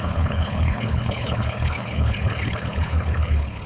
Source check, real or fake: fake